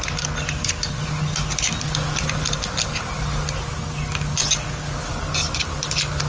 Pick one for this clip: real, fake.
real